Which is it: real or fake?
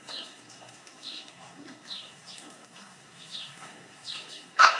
fake